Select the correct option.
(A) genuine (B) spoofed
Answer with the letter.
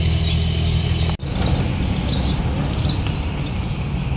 A